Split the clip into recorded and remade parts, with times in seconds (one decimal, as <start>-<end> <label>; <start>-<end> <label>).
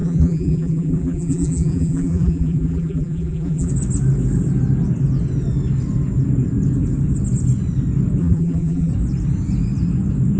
0.0-3.7 remade; 3.7-8.2 recorded; 8.2-8.9 remade; 8.9-10.4 recorded